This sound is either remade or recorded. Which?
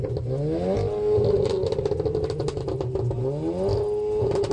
recorded